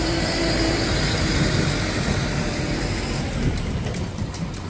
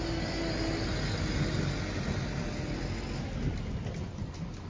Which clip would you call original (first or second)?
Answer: second